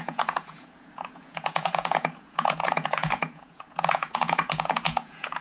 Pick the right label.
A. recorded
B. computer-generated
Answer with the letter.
B